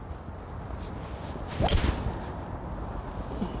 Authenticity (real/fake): real